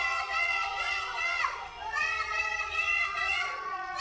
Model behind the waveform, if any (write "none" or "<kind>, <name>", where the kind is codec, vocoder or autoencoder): vocoder, Vocos